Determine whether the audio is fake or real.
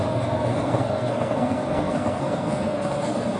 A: fake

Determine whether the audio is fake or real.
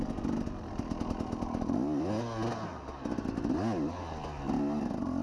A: real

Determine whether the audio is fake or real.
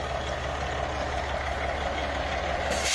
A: real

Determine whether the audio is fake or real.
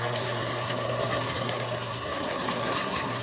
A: fake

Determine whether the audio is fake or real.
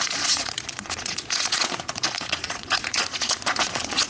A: fake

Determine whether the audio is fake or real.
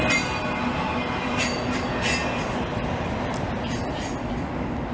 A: real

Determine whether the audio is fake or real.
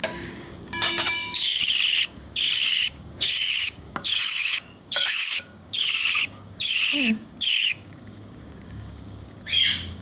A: fake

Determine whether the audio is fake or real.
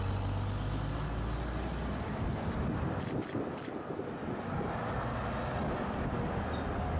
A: real